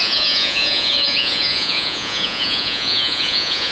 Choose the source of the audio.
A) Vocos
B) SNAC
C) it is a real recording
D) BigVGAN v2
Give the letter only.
A